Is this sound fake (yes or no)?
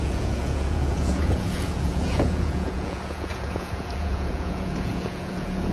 yes